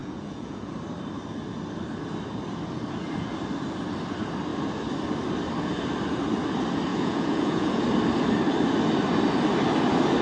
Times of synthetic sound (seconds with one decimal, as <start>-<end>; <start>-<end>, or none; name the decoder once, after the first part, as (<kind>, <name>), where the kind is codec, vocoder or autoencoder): 0.0-0.7 (vocoder, Vocos); 6.9-7.8